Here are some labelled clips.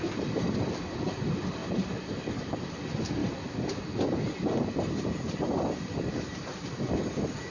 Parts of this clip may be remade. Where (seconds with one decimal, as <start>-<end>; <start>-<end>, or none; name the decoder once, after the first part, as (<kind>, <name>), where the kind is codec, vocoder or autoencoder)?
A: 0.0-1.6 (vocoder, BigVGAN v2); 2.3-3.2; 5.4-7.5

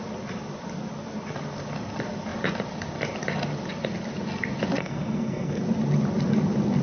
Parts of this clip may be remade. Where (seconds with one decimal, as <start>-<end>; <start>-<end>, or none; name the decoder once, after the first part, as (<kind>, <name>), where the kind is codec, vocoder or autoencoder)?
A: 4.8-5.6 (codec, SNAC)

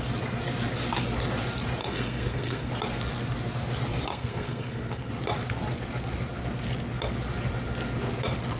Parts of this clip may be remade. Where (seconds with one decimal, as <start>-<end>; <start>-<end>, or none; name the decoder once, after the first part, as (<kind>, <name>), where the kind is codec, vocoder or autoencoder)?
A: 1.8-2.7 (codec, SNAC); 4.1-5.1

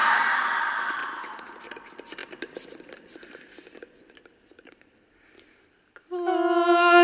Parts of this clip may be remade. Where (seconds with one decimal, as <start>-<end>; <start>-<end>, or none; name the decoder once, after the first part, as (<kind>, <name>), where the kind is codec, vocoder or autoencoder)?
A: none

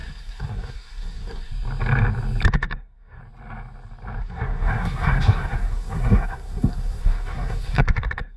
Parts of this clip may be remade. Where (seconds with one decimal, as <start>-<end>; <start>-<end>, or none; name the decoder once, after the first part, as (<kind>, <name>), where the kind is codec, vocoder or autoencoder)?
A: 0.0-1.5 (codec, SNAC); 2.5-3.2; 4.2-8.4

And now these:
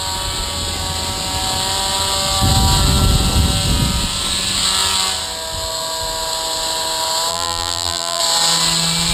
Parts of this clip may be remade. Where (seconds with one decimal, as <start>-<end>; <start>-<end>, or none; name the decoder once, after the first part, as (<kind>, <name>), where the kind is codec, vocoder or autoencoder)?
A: 7.3-8.2 (vocoder, BigVGAN v2)